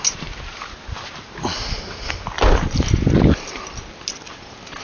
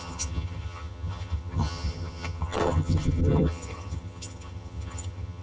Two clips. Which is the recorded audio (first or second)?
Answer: first